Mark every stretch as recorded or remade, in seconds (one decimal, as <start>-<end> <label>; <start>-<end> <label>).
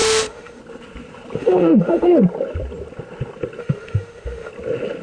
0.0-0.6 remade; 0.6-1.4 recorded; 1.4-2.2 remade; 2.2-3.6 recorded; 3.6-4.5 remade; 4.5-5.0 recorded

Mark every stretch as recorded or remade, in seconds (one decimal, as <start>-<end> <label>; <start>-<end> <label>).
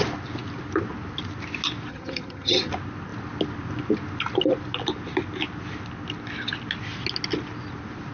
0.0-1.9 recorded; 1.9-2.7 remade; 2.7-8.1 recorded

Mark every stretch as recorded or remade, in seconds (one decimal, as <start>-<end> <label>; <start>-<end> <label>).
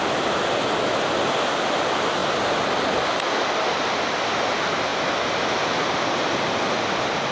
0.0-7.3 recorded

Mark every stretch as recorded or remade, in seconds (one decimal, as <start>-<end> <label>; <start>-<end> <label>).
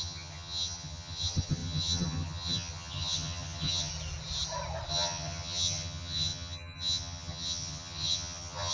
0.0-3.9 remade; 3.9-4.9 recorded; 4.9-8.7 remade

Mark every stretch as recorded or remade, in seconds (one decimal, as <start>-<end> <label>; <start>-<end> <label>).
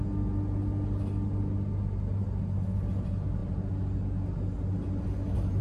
0.0-5.6 recorded